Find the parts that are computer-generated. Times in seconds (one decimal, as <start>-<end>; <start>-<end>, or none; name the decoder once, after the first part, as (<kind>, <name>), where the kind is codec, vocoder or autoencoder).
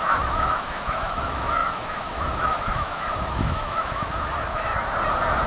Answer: 0.0-4.7 (autoencoder, DAC-VAE)